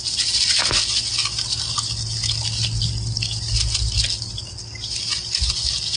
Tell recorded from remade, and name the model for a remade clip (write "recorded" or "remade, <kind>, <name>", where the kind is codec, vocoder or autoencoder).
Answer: recorded